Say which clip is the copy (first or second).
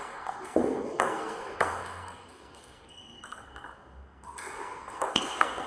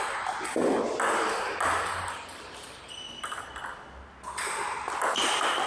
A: first